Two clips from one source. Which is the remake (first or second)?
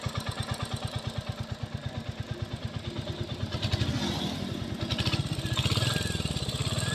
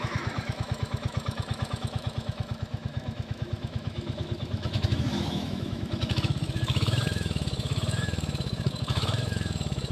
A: second